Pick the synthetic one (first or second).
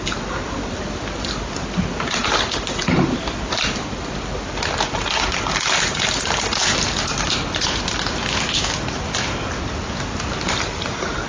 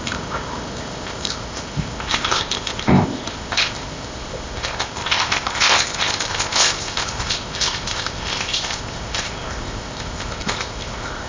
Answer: second